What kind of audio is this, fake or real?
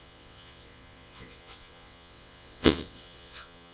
fake